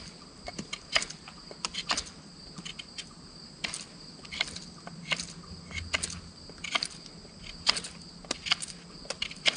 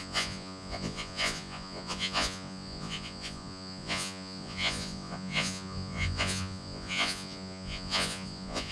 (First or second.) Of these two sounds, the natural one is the first